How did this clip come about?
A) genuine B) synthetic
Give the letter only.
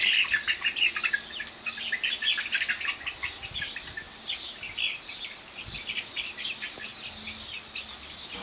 A